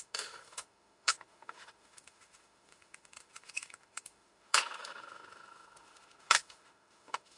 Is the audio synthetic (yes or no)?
yes